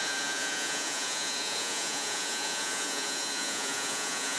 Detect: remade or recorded remade